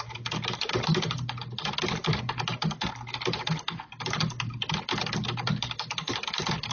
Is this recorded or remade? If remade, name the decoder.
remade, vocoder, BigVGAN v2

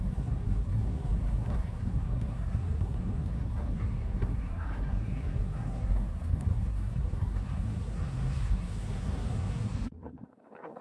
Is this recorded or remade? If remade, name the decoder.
remade, codec, SNAC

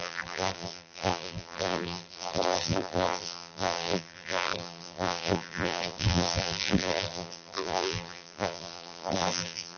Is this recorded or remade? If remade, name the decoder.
remade, vocoder, BigVGAN v2